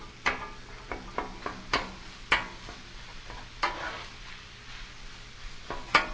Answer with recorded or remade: recorded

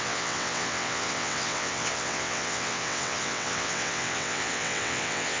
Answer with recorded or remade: remade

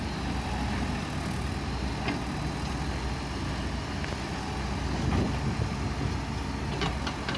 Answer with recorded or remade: recorded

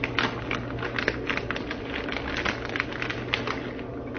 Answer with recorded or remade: recorded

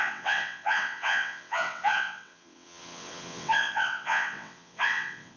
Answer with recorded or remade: remade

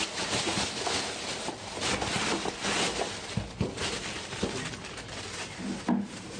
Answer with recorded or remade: recorded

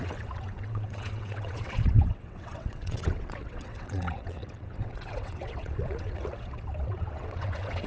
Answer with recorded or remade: remade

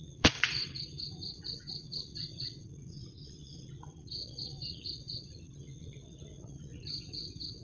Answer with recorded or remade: remade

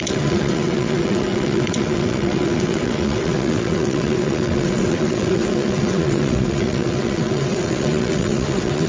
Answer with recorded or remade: remade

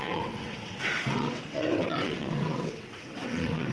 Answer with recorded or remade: remade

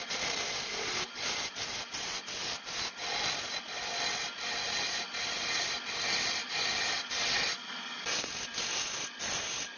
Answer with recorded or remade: recorded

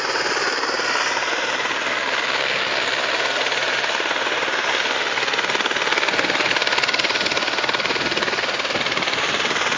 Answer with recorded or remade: recorded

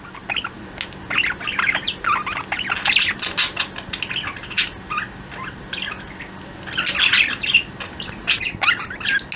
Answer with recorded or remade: recorded